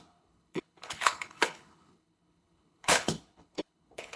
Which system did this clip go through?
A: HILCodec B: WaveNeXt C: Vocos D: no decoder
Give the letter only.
A